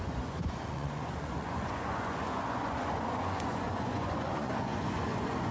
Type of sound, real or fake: fake